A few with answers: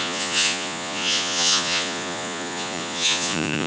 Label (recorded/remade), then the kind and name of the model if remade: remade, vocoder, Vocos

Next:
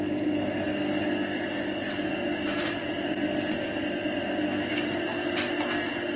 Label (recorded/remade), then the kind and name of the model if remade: recorded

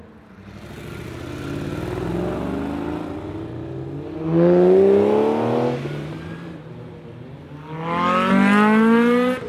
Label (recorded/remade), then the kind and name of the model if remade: recorded